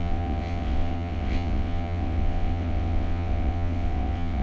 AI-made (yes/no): yes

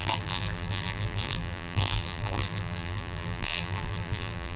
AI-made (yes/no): yes